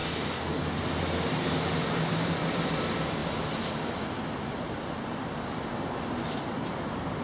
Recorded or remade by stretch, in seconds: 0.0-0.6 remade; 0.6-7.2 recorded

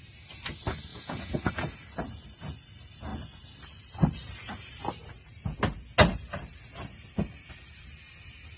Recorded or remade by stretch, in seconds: 0.0-0.9 recorded; 0.9-1.4 remade; 1.4-8.6 recorded

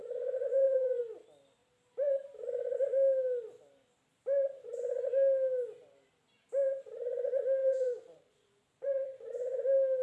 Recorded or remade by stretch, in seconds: 0.0-1.0 remade; 1.0-7.6 recorded; 7.6-9.6 remade; 9.6-10.0 recorded

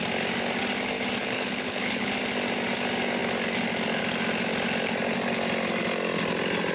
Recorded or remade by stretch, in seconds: 0.0-1.2 recorded; 1.2-2.1 remade; 2.1-6.7 recorded

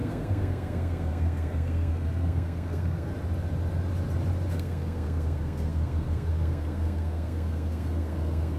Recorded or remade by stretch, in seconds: 0.0-3.1 remade; 3.1-4.5 recorded; 4.5-8.6 remade

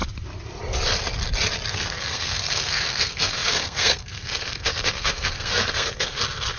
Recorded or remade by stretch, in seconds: 0.0-1.7 recorded; 1.7-6.6 remade

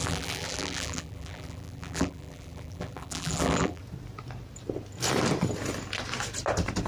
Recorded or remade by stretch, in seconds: 0.0-3.8 remade; 3.8-6.9 recorded